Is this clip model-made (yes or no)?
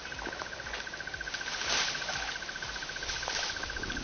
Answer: no